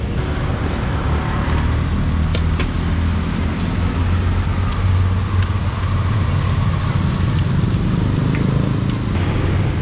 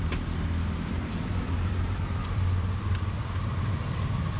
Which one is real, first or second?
first